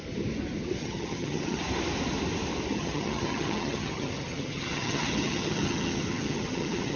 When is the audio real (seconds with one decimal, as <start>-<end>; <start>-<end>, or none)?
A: 0.0-0.8; 1.6-2.7